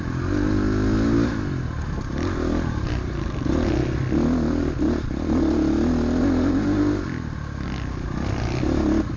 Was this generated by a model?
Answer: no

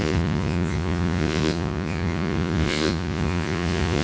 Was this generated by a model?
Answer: yes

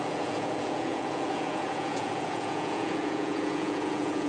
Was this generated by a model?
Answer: yes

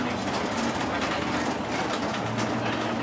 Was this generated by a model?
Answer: no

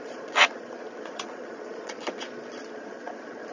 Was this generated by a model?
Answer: yes